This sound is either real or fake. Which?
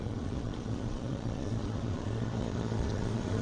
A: fake